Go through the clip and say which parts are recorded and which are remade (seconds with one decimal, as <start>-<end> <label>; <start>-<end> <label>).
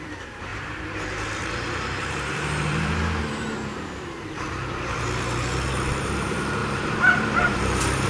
0.0-8.1 remade